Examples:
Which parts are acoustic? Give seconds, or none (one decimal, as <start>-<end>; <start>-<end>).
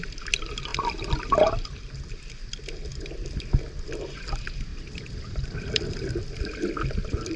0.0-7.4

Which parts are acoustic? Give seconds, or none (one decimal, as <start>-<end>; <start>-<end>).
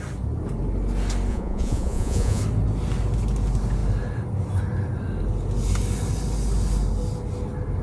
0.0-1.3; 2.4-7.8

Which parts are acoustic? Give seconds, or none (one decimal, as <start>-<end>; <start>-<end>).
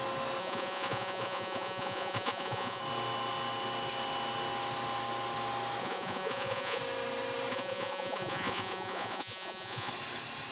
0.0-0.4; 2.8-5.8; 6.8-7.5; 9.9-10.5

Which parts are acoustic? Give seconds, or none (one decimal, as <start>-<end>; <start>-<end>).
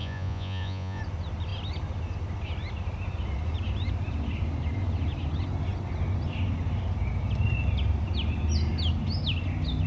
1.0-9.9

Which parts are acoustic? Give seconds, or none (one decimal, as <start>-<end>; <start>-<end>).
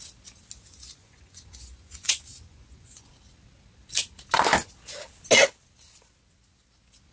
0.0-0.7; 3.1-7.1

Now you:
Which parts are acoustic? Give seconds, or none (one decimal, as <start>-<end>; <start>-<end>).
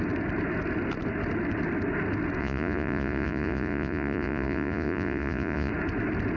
0.0-2.4; 5.7-6.4